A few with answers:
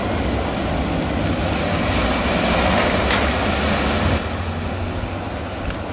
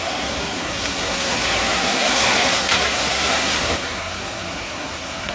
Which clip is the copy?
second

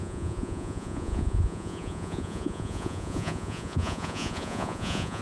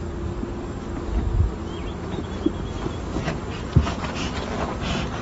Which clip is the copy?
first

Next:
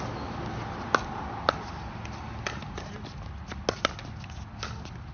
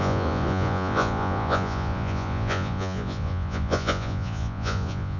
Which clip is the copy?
second